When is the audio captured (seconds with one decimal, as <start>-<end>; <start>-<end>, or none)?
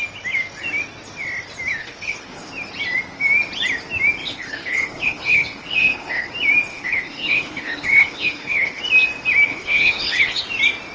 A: 0.0-1.8; 2.5-4.2; 6.3-6.7; 8.8-9.5; 10.4-10.9